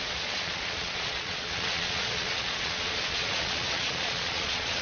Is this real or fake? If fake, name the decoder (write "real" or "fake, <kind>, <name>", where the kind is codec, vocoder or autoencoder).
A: fake, vocoder, Vocos